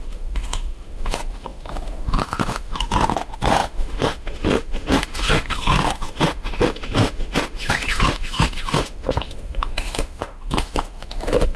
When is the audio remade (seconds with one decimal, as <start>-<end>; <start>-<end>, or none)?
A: 0.0-11.6